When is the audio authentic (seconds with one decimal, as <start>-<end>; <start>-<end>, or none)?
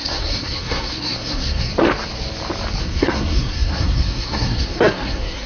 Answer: 1.7-2.8